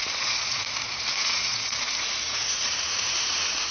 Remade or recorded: remade